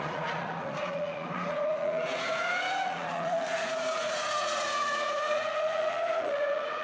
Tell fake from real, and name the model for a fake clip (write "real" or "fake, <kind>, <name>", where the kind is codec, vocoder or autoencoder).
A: fake, vocoder, Vocos